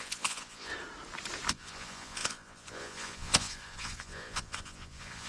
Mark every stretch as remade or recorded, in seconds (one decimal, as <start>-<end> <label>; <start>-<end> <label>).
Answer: 0.0-0.7 remade; 0.7-1.5 recorded; 1.5-5.3 remade